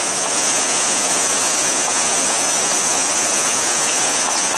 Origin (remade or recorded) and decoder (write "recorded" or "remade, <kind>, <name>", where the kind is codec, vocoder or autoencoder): remade, vocoder, Vocos